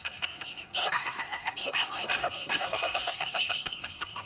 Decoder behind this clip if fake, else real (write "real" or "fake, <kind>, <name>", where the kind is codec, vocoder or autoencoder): fake, codec, SNAC